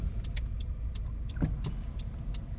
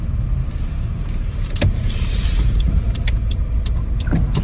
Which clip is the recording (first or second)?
first